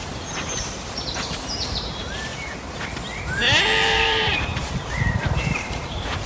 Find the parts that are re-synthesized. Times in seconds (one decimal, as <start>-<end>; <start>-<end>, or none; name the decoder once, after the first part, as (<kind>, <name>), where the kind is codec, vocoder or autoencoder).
0.0-2.3 (vocoder, BigVGAN v2); 3.9-6.3